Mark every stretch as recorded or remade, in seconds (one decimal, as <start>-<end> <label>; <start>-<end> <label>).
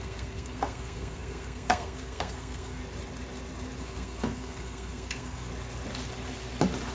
0.0-2.8 remade; 2.8-3.8 recorded; 3.8-5.5 remade; 5.5-6.9 recorded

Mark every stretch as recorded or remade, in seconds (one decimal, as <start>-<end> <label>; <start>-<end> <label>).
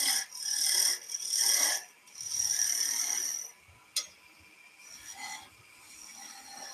0.0-6.7 recorded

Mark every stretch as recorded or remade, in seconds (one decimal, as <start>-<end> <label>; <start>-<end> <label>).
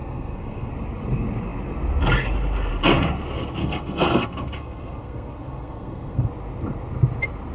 0.0-0.7 remade; 0.7-3.6 recorded; 3.6-6.3 remade; 6.3-7.5 recorded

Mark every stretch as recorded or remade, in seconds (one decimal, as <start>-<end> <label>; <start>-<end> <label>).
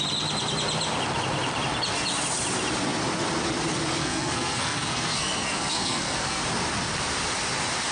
0.0-4.0 recorded; 4.0-6.4 remade; 6.4-7.9 recorded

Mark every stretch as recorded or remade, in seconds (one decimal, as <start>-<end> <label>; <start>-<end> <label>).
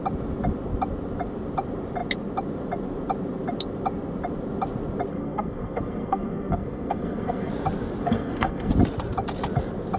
0.0-5.1 recorded; 5.1-7.5 remade; 7.5-8.0 recorded; 8.0-8.7 remade; 8.7-10.0 recorded